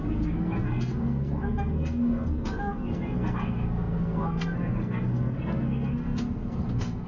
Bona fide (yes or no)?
no